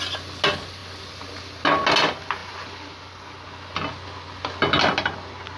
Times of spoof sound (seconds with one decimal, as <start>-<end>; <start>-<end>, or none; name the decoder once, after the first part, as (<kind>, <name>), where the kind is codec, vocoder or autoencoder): none

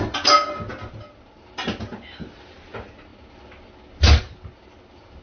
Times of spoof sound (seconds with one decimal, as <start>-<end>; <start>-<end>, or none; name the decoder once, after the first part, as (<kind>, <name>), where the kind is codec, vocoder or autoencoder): none